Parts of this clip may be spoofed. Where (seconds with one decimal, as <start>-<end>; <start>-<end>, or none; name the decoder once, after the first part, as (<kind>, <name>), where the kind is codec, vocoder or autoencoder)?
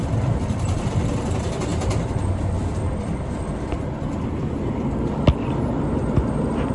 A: 0.0-6.7 (vocoder, BigVGAN v2)